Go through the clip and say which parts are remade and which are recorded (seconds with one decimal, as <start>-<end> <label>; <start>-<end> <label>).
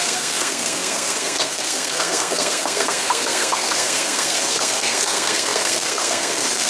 0.0-6.7 remade